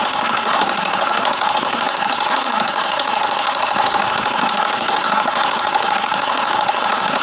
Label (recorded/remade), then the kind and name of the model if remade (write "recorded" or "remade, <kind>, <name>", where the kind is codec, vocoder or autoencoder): remade, codec, SNAC